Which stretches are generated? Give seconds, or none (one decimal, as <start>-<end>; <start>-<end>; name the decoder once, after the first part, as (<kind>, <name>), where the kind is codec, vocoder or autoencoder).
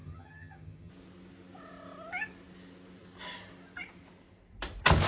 0.0-0.9 (vocoder, HiFi-GAN)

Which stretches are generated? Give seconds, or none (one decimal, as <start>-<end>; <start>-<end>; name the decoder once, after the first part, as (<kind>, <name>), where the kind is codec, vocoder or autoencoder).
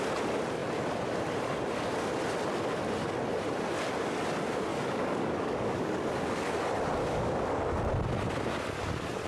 4.7-6.6 (codec, DAC); 7.0-7.7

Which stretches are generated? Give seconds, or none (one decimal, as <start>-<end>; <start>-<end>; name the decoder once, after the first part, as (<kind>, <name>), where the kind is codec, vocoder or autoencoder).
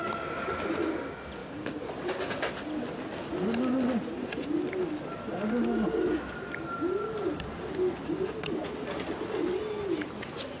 none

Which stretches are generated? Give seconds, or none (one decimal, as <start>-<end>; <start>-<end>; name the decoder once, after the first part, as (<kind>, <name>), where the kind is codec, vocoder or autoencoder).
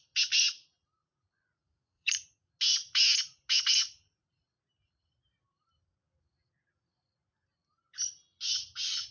1.0-2.5 (vocoder, Vocos)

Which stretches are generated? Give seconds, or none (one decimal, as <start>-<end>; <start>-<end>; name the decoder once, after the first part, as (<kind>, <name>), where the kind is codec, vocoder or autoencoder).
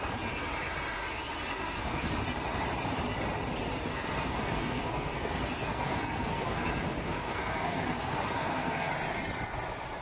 1.5-2.1 (codec, SNAC); 3.9-8.9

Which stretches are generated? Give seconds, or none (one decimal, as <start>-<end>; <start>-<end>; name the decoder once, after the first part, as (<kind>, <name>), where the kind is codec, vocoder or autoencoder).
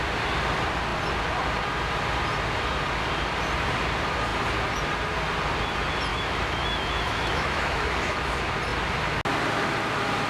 6.1-8.2 (autoencoder, DAC-VAE)